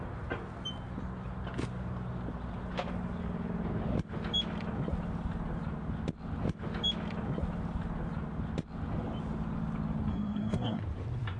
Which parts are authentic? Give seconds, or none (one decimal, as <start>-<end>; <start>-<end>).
0.0-10.1; 10.8-11.4